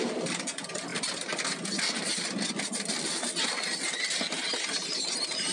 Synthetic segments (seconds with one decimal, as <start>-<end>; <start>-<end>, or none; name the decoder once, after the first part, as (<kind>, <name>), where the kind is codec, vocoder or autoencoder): none